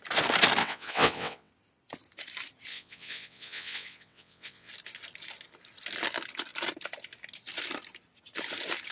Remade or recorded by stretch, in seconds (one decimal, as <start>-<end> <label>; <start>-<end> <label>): 0.0-0.6 recorded; 0.6-1.5 remade; 1.5-2.7 recorded; 2.7-4.7 remade; 4.7-8.9 recorded